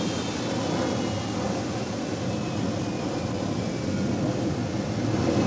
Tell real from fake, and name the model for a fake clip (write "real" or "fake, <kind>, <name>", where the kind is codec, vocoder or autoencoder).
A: real